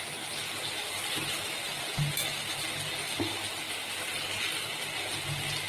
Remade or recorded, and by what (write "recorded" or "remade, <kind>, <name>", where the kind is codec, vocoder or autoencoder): recorded